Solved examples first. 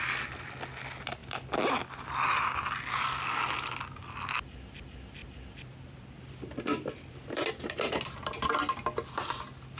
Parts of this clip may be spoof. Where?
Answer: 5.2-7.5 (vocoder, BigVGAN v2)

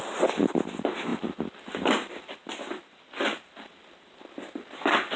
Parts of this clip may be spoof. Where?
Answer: 1.1-4.2 (vocoder, BigVGAN v2)

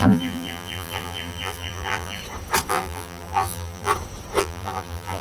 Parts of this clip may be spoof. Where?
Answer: 0.0-2.2 (vocoder, BigVGAN v2); 2.7-3.9; 4.4-5.2

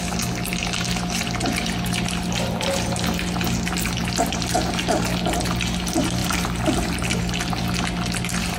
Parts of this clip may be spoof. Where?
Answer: 6.2-7.2 (vocoder, BigVGAN v2)